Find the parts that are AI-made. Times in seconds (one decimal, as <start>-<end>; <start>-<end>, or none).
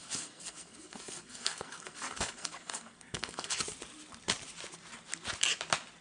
0.0-3.6